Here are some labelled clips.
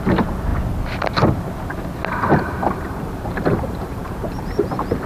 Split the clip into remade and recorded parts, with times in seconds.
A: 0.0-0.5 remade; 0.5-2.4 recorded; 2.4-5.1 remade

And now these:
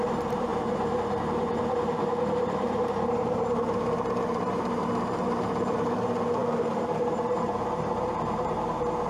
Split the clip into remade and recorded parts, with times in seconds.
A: 0.0-0.5 remade; 0.5-1.1 recorded; 1.1-9.1 remade

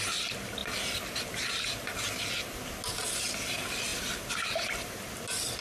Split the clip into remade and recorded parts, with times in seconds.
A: 0.0-5.6 recorded